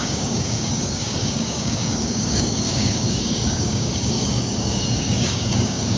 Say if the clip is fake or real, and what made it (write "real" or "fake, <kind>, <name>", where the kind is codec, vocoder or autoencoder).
fake, codec, DAC